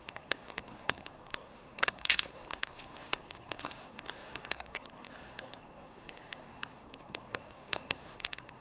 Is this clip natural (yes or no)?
no